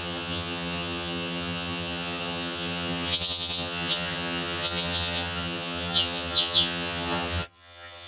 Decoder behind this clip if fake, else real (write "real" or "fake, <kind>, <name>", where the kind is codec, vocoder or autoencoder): fake, vocoder, HiFi-GAN